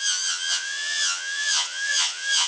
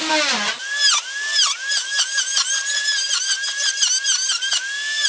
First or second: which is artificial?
first